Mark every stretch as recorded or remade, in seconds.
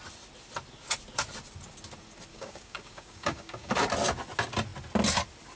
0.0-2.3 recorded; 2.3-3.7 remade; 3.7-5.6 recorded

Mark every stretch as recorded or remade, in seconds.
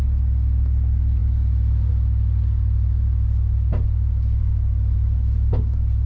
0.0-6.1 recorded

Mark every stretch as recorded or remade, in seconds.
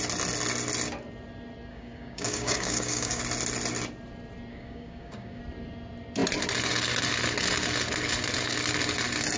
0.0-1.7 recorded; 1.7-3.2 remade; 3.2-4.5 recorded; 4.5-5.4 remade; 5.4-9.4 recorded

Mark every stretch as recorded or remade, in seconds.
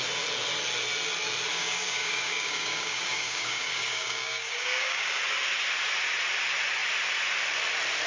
0.0-1.5 recorded; 1.5-5.2 remade; 5.2-8.1 recorded